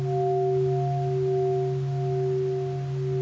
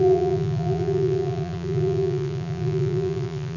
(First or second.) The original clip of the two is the first